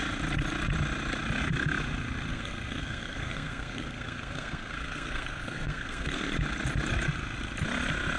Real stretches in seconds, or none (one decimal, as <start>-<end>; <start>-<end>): 0.0-2.3; 6.2-8.2